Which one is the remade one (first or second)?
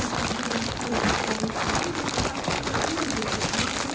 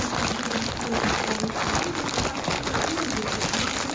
first